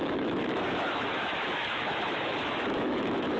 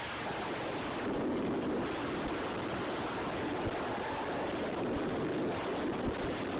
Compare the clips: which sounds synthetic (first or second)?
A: first